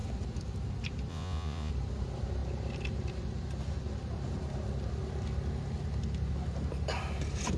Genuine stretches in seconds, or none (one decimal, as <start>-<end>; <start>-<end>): 0.0-1.1; 1.7-7.6